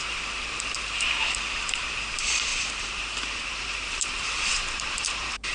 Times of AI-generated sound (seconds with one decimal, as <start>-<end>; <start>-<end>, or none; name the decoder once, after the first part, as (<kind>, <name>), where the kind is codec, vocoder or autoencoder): 0.0-5.5 (vocoder, BigVGAN v2)